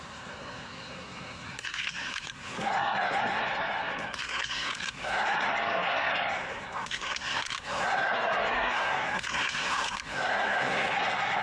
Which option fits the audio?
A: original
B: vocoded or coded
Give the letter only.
B